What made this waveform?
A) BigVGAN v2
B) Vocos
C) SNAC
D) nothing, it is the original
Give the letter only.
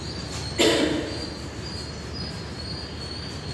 D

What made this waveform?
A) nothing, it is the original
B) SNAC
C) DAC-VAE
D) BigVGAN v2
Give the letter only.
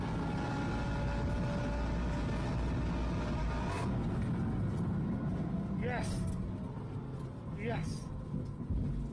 A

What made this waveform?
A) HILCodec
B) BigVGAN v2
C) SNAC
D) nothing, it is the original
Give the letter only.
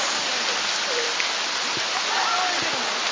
D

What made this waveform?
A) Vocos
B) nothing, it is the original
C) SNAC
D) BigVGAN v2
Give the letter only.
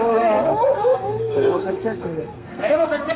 C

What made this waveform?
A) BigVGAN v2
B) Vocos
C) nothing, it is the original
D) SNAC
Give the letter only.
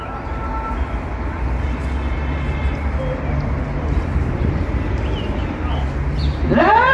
C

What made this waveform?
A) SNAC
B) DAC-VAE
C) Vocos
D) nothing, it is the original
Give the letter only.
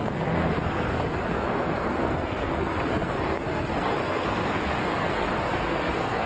A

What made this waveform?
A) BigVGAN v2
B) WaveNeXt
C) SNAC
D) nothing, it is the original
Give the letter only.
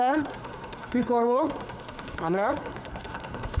C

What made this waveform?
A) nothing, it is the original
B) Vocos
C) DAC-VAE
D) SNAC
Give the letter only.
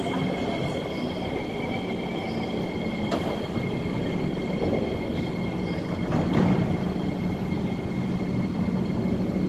A